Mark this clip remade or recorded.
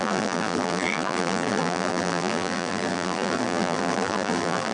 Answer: remade